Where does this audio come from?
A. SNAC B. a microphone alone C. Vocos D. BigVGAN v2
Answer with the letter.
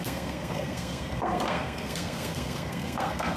A